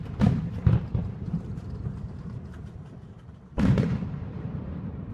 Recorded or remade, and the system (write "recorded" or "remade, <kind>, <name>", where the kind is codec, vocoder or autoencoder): remade, vocoder, BigVGAN v2